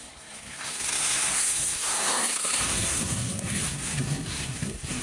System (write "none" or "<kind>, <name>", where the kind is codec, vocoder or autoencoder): codec, SNAC